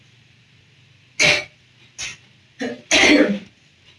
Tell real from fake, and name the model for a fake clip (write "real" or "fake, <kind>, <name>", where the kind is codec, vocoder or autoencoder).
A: real